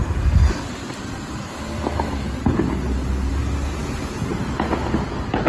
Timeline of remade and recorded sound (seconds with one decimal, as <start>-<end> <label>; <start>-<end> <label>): 0.0-5.5 recorded